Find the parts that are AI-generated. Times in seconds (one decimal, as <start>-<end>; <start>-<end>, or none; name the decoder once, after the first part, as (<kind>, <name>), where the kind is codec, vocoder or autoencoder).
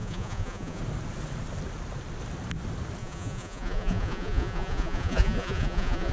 0.0-0.8 (vocoder, Vocos); 3.0-6.1